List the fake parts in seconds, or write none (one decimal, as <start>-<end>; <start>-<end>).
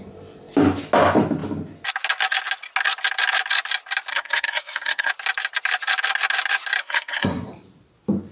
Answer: 4.1-5.1; 6.8-7.5